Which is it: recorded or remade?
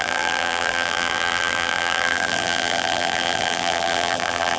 remade